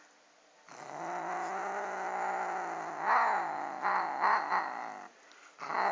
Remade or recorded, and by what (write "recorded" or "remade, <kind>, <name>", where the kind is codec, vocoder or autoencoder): recorded